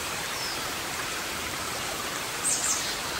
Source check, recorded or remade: remade